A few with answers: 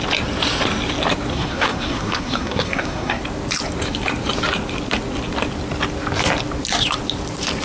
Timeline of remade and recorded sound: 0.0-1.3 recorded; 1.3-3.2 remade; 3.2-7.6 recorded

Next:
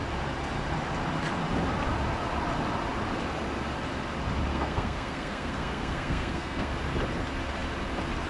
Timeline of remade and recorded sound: 0.0-4.5 recorded; 4.5-6.7 remade; 6.7-8.3 recorded